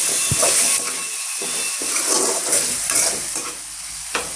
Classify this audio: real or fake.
real